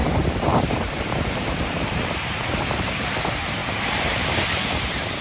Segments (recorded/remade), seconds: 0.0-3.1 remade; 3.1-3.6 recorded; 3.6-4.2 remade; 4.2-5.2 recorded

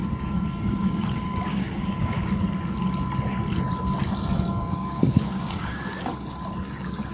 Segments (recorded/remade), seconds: 0.0-2.2 remade; 2.2-4.5 recorded; 4.5-6.1 remade; 6.1-7.1 recorded

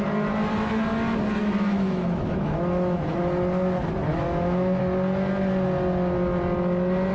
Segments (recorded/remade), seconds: 0.0-1.4 recorded; 1.4-3.2 remade; 3.2-4.1 recorded; 4.1-4.8 remade; 4.8-7.1 recorded

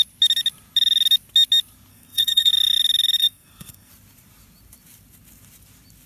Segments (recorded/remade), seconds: 0.0-1.9 recorded; 1.9-2.5 remade; 2.5-3.2 recorded; 3.2-3.9 remade; 3.9-6.1 recorded

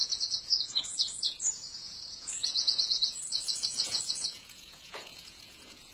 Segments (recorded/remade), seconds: 0.0-5.9 remade

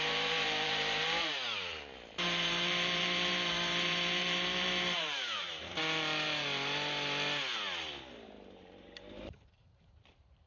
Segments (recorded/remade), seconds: 0.0-5.8 remade; 5.8-8.1 recorded; 8.1-10.5 remade

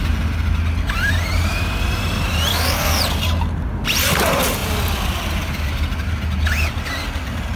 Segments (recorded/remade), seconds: 0.0-2.5 recorded; 2.5-3.0 remade; 3.0-7.6 recorded

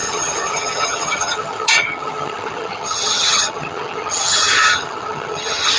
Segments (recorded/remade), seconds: 0.0-5.8 remade